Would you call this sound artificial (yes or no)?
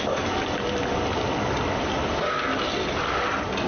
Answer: no